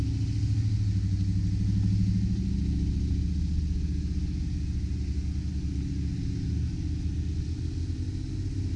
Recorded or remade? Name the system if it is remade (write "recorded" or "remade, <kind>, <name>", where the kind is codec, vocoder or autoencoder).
recorded